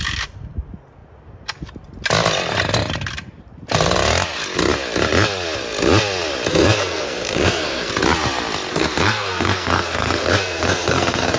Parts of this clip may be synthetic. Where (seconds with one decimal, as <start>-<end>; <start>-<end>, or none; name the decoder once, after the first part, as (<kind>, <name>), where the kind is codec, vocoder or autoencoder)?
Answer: 6.5-7.9 (codec, SNAC); 8.7-11.4